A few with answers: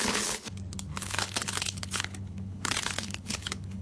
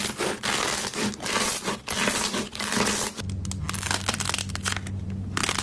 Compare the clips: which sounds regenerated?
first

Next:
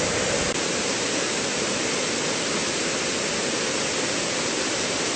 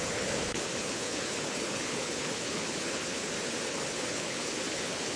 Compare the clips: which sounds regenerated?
second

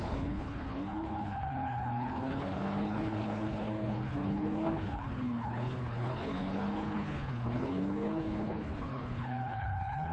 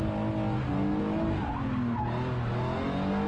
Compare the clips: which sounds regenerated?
first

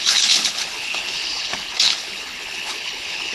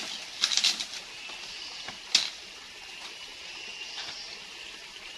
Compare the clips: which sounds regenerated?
first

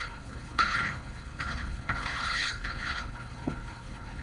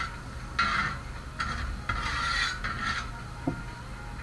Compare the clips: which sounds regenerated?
first